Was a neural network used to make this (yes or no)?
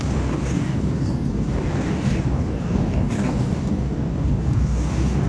yes